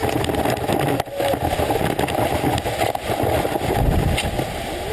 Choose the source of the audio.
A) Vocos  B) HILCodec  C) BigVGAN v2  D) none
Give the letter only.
D